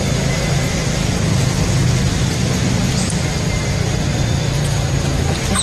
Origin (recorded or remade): recorded